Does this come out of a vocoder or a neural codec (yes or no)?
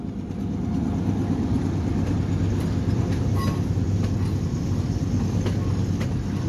no